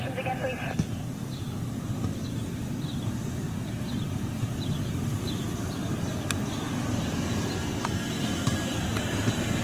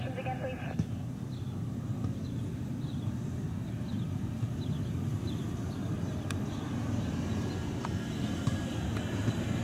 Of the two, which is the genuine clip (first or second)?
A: second